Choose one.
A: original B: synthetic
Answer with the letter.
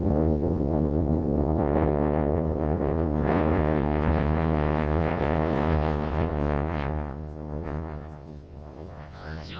B